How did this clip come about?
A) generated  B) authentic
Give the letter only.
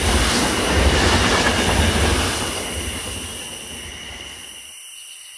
B